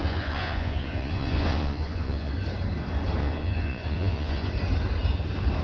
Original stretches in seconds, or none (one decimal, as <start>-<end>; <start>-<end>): 2.3-3.2; 4.5-5.6